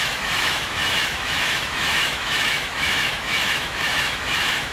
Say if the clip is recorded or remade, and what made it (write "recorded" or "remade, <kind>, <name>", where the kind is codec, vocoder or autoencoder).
remade, autoencoder, DAC-VAE